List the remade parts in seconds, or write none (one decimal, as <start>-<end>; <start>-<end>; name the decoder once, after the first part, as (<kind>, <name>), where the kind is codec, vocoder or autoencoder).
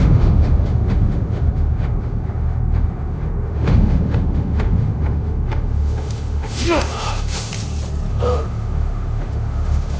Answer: 0.0-7.5 (autoencoder, DAC-VAE); 8.1-10.0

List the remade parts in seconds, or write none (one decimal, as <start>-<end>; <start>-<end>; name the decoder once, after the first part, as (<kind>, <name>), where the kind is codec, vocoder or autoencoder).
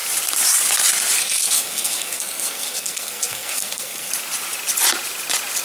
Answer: 1.2-4.1 (codec, SNAC)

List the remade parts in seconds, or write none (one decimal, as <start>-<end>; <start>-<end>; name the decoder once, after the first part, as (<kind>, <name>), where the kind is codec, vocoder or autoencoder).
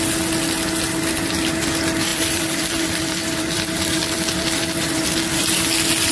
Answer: 2.1-5.3 (vocoder, BigVGAN v2)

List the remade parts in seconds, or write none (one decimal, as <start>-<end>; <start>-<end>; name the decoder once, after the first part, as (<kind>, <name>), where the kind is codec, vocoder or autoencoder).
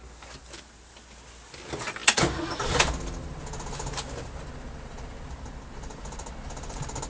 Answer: none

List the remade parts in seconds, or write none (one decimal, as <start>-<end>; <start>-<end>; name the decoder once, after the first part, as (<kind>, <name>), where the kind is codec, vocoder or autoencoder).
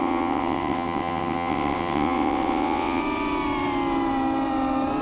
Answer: 0.0-3.0 (vocoder, WaveNeXt)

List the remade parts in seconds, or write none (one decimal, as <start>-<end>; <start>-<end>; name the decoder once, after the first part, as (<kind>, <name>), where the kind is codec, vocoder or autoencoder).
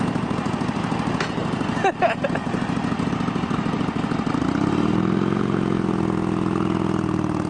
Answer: none